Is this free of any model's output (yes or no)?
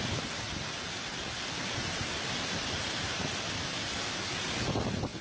no